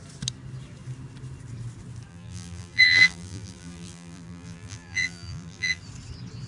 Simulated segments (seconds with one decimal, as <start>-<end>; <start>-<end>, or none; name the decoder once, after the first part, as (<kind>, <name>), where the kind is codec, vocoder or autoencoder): 2.1-5.8 (vocoder, BigVGAN v2)